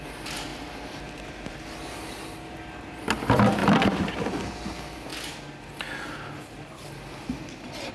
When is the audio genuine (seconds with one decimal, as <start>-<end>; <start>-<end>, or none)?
0.0-0.5; 1.5-7.9